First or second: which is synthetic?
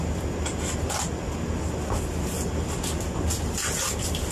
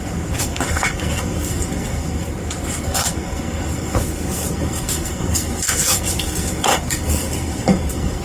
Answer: second